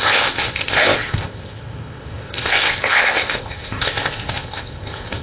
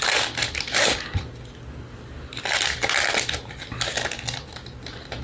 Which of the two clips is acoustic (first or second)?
second